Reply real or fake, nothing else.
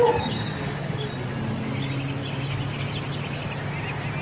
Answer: real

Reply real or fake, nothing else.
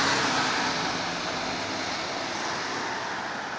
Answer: real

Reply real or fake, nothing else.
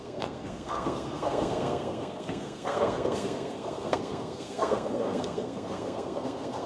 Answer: fake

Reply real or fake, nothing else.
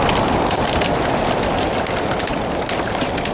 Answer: real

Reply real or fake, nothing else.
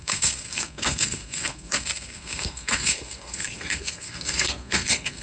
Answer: fake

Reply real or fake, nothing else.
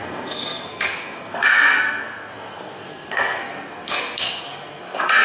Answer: fake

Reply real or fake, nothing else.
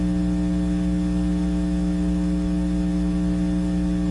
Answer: real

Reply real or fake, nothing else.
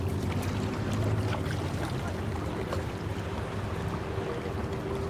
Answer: real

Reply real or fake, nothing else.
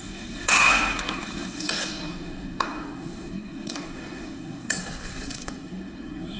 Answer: fake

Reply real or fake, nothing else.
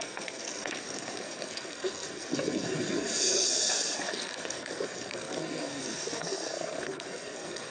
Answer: fake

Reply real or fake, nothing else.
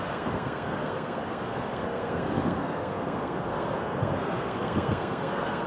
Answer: fake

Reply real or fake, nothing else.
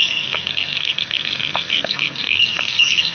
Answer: fake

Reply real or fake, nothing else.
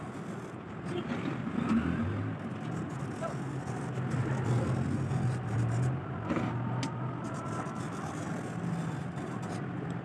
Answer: real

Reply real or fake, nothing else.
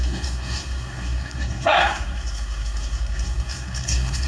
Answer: fake